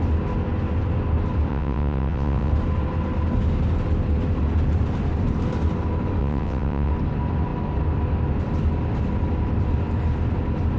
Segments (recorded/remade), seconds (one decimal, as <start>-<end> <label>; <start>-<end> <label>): 0.0-1.5 recorded; 1.5-2.5 remade; 2.5-6.2 recorded; 6.2-6.9 remade; 6.9-10.8 recorded